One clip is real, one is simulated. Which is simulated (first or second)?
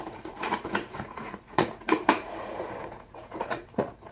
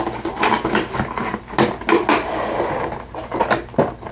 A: first